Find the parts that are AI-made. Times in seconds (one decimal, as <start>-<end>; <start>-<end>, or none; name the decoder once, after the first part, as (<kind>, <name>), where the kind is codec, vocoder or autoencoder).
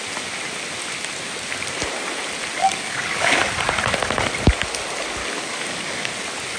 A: 2.6-3.4 (codec, DAC); 5.2-6.1